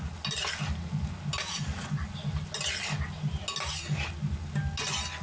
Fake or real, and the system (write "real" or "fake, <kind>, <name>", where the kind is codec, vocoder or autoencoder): real